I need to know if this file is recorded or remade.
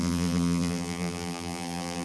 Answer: remade